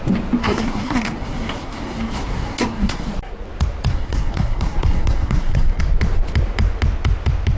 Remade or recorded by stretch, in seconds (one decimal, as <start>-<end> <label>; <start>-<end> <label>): 0.0-0.4 recorded; 0.4-3.1 remade; 3.1-3.9 recorded; 3.9-5.8 remade; 5.8-7.6 recorded